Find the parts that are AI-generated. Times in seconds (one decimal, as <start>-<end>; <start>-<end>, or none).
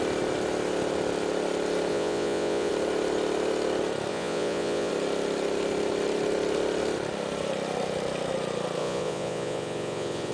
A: 1.9-2.7; 4.1-4.9; 8.8-10.3